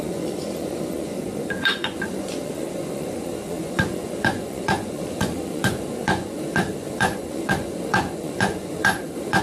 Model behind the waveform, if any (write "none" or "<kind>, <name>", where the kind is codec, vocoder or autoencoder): vocoder, Vocos